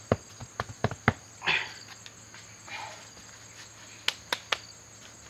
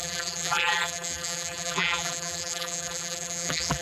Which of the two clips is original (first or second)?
first